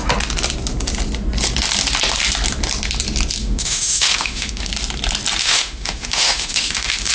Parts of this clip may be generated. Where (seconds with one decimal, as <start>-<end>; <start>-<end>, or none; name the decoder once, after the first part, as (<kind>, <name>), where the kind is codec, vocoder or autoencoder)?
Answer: 3.4-4.7 (autoencoder, DAC-VAE); 5.4-7.1